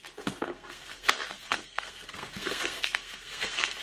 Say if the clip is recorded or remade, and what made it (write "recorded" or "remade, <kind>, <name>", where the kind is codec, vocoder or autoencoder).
remade, codec, SNAC